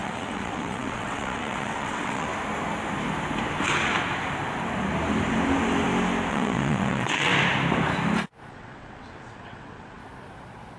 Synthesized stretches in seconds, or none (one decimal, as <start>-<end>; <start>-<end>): 0.0-2.3; 6.3-7.3; 8.5-10.0